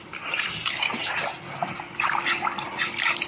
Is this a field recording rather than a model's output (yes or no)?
yes